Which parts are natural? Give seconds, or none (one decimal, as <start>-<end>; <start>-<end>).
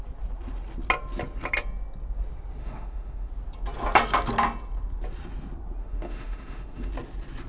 0.0-2.6; 3.3-5.8; 6.9-7.5